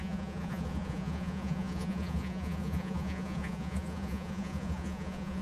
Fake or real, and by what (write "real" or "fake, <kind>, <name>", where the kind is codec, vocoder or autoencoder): fake, vocoder, Vocos